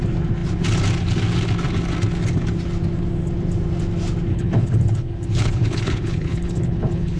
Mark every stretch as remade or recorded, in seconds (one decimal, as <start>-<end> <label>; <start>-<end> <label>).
0.0-4.3 recorded; 4.3-7.2 remade